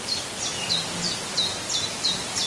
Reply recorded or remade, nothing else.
recorded